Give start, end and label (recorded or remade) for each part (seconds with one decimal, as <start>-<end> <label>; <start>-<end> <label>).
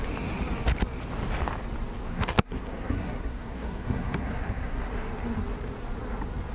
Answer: 0.0-2.1 recorded; 2.1-4.9 remade; 4.9-6.5 recorded